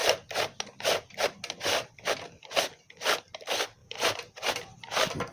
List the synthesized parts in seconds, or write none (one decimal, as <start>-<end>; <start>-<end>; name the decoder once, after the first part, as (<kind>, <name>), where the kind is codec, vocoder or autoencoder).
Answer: 3.8-4.5 (vocoder, BigVGAN v2)